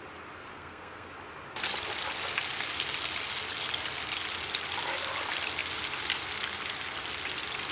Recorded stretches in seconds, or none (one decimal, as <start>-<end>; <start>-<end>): 0.0-0.5; 1.1-7.7